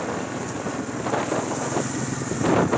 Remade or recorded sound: recorded